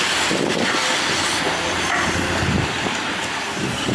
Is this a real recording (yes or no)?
yes